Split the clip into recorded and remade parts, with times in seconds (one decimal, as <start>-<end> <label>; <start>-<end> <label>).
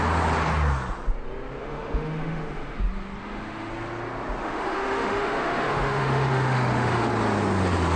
0.0-1.6 recorded; 1.6-2.8 remade; 2.8-3.2 recorded; 3.2-3.7 remade; 3.7-4.4 recorded; 4.4-7.1 remade; 7.1-8.0 recorded